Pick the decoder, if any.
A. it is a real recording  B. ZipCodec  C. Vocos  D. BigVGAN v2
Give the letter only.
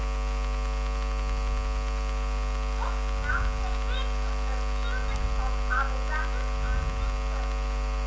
A